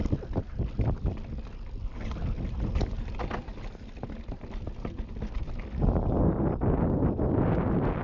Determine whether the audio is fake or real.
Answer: real